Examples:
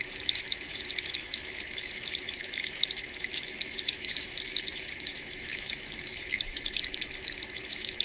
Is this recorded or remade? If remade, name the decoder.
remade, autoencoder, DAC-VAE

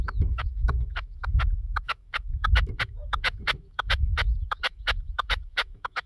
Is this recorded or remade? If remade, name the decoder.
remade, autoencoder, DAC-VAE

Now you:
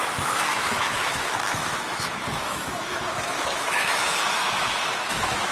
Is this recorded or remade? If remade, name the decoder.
remade, autoencoder, DAC-VAE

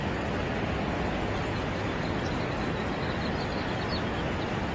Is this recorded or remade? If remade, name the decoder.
recorded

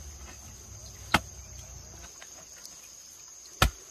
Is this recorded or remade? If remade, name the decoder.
recorded